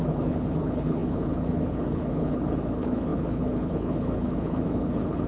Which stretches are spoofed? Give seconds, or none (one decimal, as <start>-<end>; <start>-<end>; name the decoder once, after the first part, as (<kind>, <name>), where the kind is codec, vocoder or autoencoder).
0.0-5.3 (codec, HILCodec)